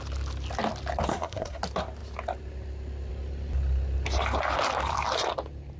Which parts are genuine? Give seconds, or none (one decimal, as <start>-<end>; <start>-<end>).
0.0-1.1; 1.6-5.8